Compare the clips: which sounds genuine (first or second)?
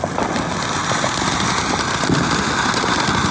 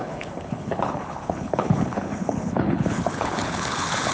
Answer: first